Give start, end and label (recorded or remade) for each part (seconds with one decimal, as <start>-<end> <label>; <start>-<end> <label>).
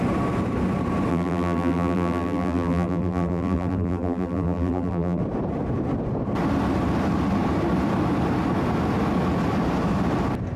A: 0.0-1.1 recorded; 1.1-5.2 remade; 5.2-10.6 recorded